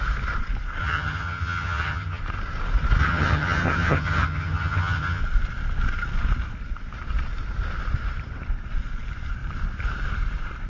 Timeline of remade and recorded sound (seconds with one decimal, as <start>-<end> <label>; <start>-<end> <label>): 0.0-0.8 recorded; 0.8-2.2 remade; 2.2-3.0 recorded; 3.0-5.2 remade; 5.2-10.7 recorded